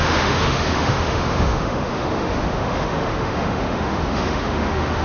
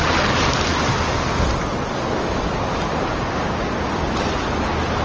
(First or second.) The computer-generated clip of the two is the first